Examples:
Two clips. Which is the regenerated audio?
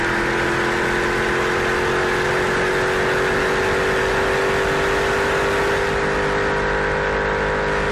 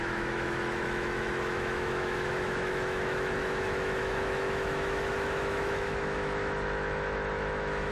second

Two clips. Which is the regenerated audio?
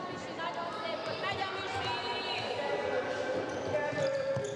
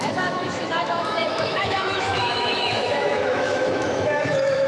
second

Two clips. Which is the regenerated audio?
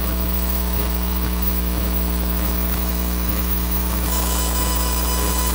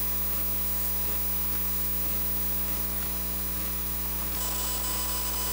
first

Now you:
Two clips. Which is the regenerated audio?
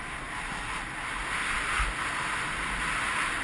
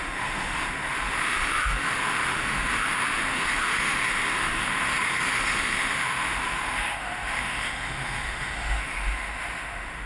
second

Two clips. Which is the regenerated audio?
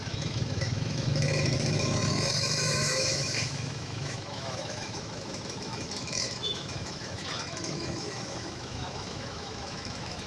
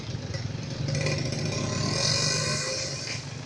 first